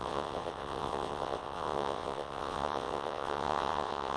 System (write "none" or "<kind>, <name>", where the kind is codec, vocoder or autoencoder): vocoder, WaveNeXt